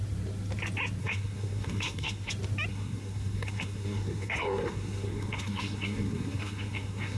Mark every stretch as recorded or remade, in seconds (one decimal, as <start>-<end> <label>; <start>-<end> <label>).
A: 0.0-1.0 recorded; 1.0-2.3 remade; 2.3-2.7 recorded; 2.7-7.2 remade